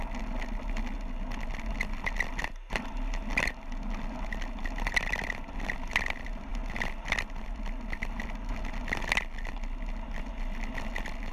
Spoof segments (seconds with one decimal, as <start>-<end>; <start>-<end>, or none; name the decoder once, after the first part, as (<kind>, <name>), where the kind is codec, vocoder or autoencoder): none